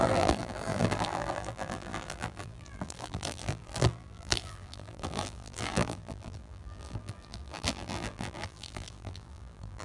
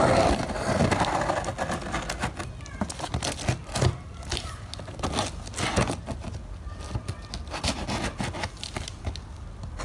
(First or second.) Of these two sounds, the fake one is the first